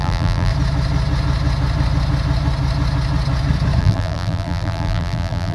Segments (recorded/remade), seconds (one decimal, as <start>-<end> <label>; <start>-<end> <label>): 0.0-0.5 remade; 0.5-3.8 recorded; 3.8-5.5 remade

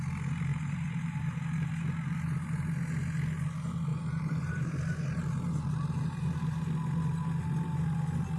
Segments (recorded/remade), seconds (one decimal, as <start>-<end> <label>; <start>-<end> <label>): 0.0-0.5 recorded; 0.5-1.7 remade; 1.7-3.9 recorded; 3.9-6.6 remade; 6.6-8.4 recorded

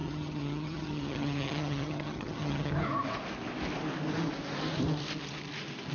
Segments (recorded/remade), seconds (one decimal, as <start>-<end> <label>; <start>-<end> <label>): 0.0-2.7 remade; 2.7-5.9 recorded

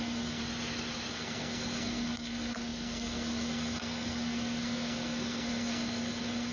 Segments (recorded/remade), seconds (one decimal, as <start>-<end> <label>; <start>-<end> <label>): 0.0-0.4 remade; 0.4-1.1 recorded; 1.1-6.5 remade